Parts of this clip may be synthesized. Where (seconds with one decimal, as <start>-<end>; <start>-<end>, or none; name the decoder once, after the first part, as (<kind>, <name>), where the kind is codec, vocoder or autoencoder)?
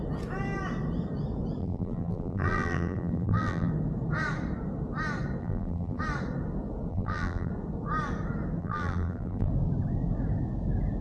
1.6-3.7 (vocoder, BigVGAN v2); 5.4-6.0; 6.9-7.5; 8.6-9.5